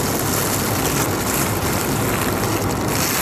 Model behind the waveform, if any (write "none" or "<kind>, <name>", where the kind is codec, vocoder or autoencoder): none